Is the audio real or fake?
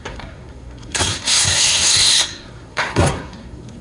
fake